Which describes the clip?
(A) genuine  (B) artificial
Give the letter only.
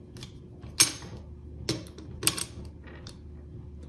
A